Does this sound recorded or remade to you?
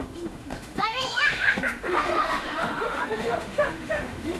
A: remade